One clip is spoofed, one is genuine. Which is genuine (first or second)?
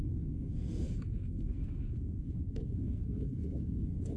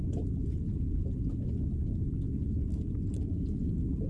second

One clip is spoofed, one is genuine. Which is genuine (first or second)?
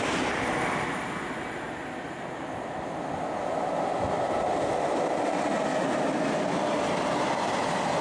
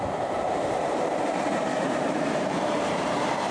first